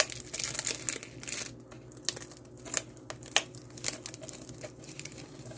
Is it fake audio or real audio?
real